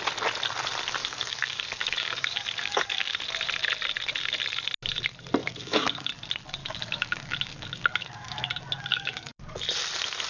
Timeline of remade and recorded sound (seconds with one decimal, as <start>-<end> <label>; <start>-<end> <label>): 0.0-1.0 recorded; 1.0-3.2 remade; 3.2-5.4 recorded; 5.4-6.1 remade; 6.1-6.6 recorded; 6.6-8.5 remade; 8.5-8.9 recorded; 8.9-9.6 remade; 9.6-10.3 recorded